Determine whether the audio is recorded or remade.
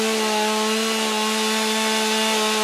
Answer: recorded